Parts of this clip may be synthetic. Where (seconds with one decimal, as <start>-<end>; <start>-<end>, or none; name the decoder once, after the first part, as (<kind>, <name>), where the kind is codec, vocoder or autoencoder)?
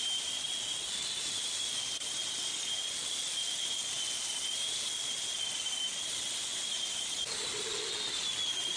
0.0-0.5 (vocoder, BigVGAN v2); 6.5-7.3